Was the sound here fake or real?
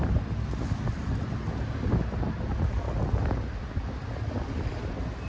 real